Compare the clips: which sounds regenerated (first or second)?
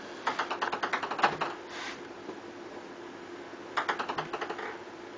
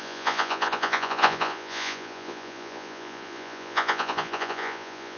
second